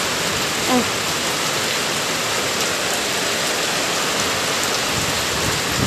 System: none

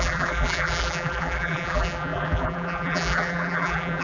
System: vocoder, BigVGAN v2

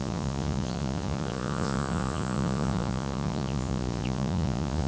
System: vocoder, Vocos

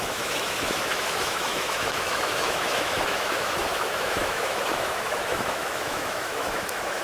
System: autoencoder, DAC-VAE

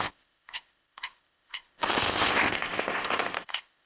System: codec, ZipCodec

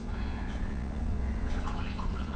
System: vocoder, Vocos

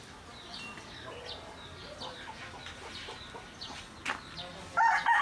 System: none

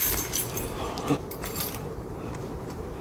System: vocoder, BigVGAN v2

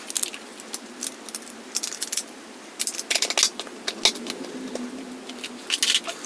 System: none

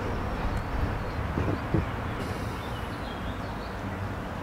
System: none